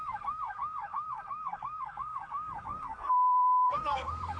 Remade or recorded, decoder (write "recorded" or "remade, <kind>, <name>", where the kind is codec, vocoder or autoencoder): remade, codec, SNAC